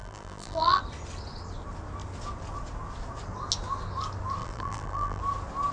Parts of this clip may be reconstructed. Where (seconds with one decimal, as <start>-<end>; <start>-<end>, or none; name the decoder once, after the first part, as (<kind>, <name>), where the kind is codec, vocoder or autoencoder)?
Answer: 0.0-0.8 (vocoder, BigVGAN v2); 4.4-5.2